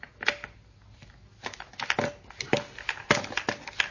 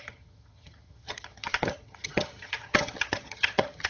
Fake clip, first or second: second